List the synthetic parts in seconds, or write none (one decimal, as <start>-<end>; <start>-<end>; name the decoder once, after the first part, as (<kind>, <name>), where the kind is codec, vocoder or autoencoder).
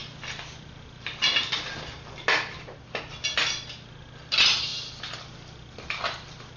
none